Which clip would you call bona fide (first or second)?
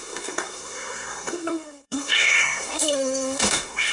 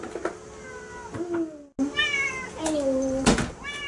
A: second